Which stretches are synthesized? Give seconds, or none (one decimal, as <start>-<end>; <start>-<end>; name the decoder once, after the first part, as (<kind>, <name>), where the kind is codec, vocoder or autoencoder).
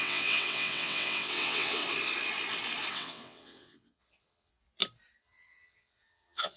0.0-1.8 (vocoder, WaveNeXt); 2.9-4.5; 5.2-6.6